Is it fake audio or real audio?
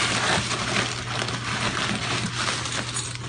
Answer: real